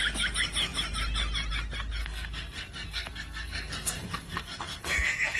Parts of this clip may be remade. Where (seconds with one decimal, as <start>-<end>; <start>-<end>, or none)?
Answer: 2.0-5.4